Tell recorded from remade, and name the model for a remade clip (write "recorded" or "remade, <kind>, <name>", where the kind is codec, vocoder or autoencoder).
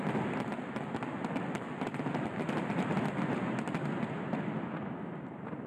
recorded